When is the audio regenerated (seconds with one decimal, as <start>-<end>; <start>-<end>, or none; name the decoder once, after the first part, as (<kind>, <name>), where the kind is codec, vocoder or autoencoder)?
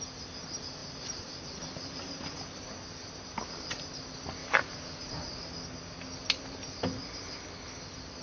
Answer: 0.8-2.4 (vocoder, BigVGAN v2); 4.4-5.1